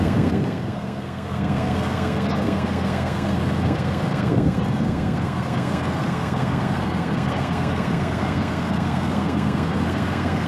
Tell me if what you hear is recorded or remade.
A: remade